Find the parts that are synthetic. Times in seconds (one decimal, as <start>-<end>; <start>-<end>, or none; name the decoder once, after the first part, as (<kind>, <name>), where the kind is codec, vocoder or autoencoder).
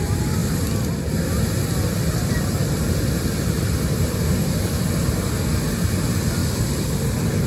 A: 6.4-6.9 (vocoder, BigVGAN v2)